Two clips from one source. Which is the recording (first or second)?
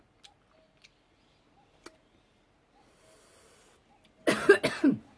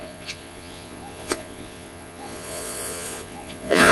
first